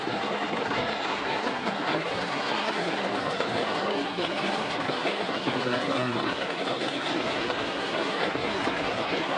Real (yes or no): no